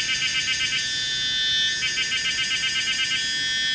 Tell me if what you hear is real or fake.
real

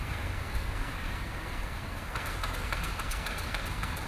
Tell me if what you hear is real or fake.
fake